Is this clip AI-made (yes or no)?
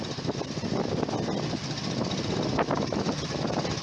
no